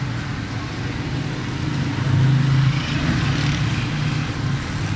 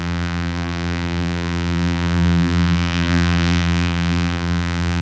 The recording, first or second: first